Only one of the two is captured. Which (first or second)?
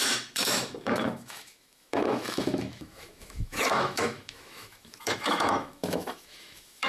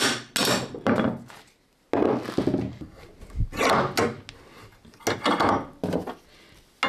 second